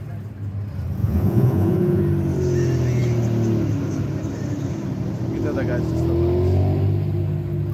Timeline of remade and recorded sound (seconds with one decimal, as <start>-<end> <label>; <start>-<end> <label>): 0.0-1.0 recorded; 1.0-2.0 remade; 2.0-7.7 recorded